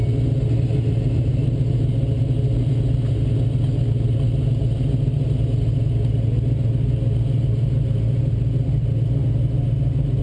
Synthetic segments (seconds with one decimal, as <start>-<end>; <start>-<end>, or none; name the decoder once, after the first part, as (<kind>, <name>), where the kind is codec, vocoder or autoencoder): none